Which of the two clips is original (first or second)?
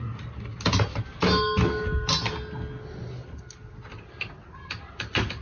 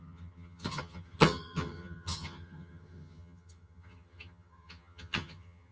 first